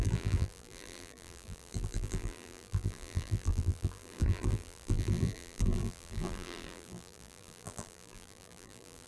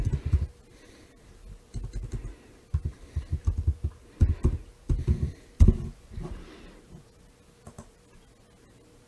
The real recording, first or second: second